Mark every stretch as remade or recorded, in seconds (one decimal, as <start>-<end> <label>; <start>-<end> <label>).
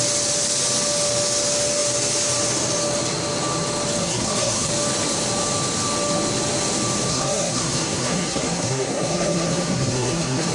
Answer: 0.0-4.0 recorded; 4.0-4.7 remade; 4.7-7.1 recorded; 7.1-10.5 remade